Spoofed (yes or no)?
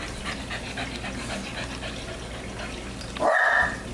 no